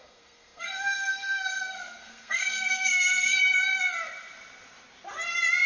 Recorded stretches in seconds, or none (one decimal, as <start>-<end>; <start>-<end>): 3.1-5.7